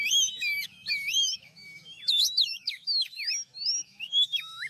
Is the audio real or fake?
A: fake